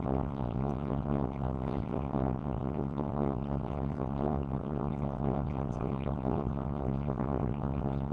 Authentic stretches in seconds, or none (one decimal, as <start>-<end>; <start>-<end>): none